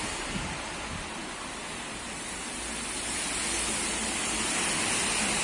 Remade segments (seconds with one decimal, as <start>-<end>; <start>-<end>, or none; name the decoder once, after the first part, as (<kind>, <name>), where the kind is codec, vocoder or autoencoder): none